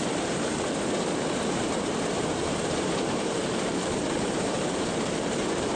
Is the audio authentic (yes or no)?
no